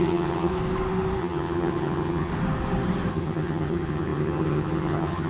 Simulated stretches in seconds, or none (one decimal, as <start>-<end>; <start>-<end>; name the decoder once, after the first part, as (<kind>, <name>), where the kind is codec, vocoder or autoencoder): 0.0-0.5 (vocoder, HiFi-GAN); 1.2-2.3; 3.1-5.3